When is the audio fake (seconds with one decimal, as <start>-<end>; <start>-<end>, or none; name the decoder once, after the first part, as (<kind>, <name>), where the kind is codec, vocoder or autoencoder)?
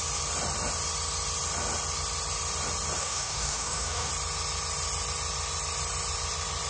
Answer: 3.0-4.1 (codec, DAC)